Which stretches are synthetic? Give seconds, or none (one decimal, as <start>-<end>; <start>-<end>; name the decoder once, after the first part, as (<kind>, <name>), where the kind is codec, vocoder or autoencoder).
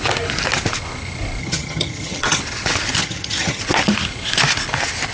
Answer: 1.4-2.4 (vocoder, HiFi-GAN); 3.0-3.6